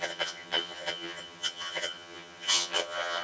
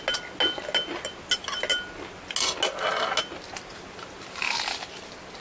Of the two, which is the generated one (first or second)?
first